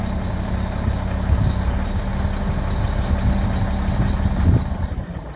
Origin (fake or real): real